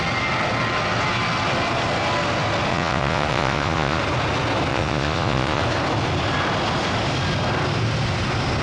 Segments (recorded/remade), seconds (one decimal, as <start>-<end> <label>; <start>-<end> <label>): 0.0-2.7 recorded; 2.7-4.0 remade; 4.0-4.7 recorded; 4.7-5.6 remade; 5.6-8.6 recorded